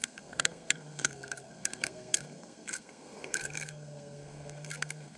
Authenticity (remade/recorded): remade